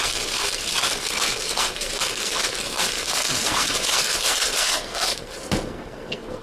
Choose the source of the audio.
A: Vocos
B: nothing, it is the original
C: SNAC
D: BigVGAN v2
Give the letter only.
C